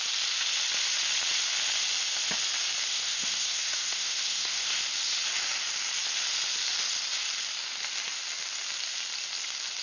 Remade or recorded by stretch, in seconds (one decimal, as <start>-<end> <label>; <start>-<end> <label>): 0.0-2.9 recorded; 2.9-4.8 remade; 4.8-9.8 recorded